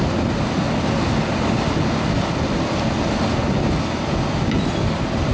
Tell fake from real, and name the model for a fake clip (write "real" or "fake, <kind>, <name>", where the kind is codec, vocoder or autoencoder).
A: real